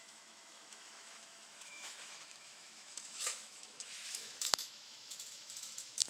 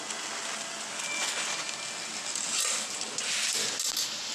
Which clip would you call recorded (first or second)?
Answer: second